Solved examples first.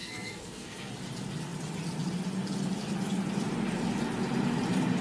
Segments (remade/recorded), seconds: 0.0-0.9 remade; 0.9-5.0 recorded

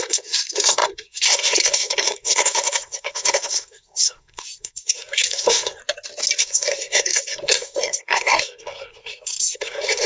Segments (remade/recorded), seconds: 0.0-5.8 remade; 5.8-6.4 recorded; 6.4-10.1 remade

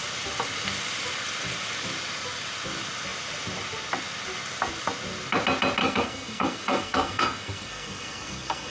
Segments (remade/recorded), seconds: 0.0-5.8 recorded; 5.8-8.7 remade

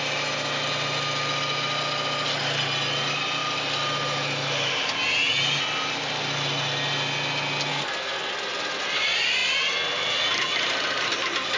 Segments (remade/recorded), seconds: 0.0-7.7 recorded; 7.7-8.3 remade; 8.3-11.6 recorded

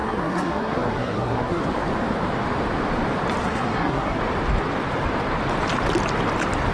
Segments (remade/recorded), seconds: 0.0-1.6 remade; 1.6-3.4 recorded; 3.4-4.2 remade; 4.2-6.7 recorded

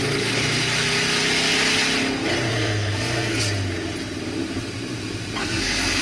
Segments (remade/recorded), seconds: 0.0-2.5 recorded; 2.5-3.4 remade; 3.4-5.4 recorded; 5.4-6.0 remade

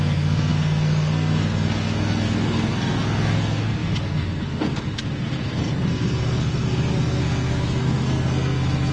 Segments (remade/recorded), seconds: 0.0-8.9 remade

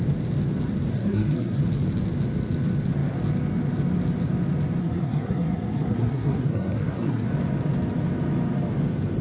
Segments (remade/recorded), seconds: 0.0-0.9 recorded; 0.9-1.6 remade; 1.6-4.8 recorded; 4.8-7.3 remade; 7.3-9.2 recorded